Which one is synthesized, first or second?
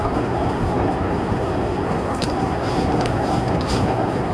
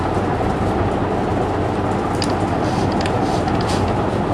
first